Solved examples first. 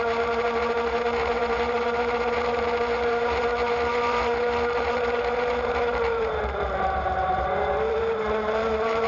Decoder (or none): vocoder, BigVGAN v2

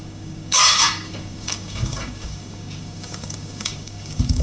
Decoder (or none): codec, DAC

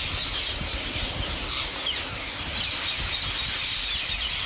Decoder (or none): none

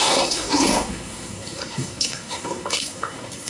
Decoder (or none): codec, SNAC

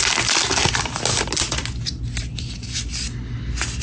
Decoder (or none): none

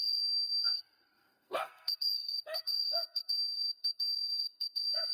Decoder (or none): codec, SNAC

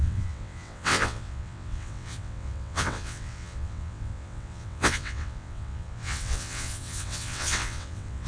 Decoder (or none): vocoder, WaveNeXt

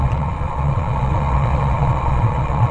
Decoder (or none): vocoder, Vocos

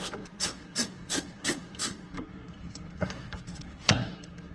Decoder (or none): codec, SNAC